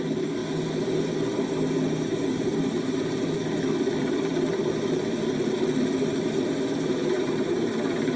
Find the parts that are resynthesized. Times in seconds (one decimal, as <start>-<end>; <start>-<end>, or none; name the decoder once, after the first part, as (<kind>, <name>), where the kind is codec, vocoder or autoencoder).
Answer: 0.0-0.4 (vocoder, BigVGAN v2); 4.0-8.2